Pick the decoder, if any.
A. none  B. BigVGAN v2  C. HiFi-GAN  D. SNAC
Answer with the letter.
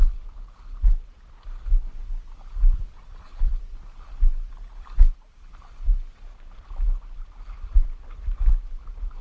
B